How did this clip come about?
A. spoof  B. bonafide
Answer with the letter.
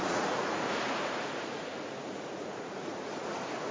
A